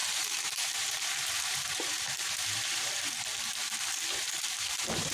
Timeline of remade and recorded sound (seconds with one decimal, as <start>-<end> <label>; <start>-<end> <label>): 0.0-3.1 remade; 3.1-4.2 recorded; 4.2-5.1 remade